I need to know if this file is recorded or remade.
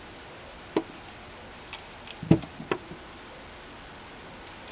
recorded